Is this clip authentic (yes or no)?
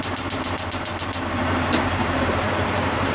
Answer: no